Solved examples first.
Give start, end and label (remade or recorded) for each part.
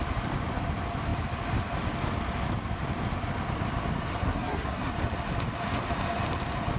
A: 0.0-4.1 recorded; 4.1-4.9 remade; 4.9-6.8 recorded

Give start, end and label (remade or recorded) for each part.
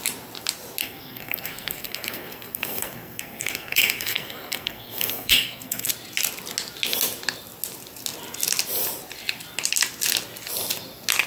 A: 0.0-0.8 recorded; 0.8-5.9 remade; 5.9-11.3 recorded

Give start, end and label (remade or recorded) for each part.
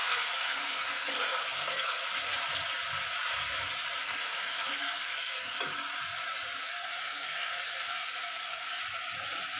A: 0.0-2.0 remade; 2.0-4.0 recorded; 4.0-5.6 remade; 5.6-6.6 recorded; 6.6-8.8 remade; 8.8-9.6 recorded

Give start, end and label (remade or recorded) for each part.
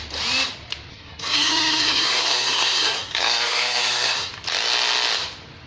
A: 0.0-0.9 recorded; 0.9-4.3 remade; 4.3-5.7 recorded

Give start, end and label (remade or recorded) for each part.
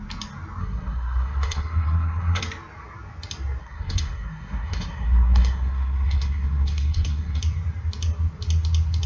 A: 0.0-0.6 recorded; 0.6-2.4 remade; 2.4-3.6 recorded; 3.6-7.4 remade; 7.4-9.1 recorded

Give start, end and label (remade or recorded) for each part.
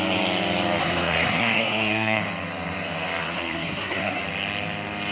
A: 0.0-0.8 recorded; 0.8-2.2 remade; 2.2-3.2 recorded; 3.2-4.2 remade; 4.2-5.1 recorded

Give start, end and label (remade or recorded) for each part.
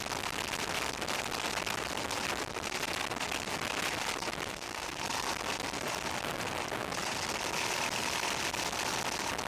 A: 0.0-4.5 recorded; 4.5-5.0 remade; 5.0-9.5 recorded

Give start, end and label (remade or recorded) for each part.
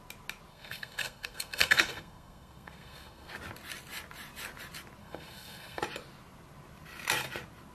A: 0.0-0.5 recorded; 0.5-3.3 remade; 3.3-5.0 recorded; 5.0-5.8 remade; 5.8-7.7 recorded